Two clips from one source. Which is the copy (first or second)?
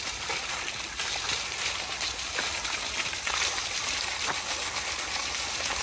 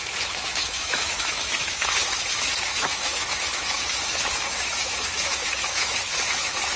second